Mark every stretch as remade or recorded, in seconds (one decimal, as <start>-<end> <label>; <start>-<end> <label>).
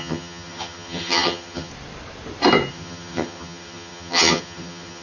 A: 0.0-1.7 remade; 1.7-2.7 recorded; 2.7-5.0 remade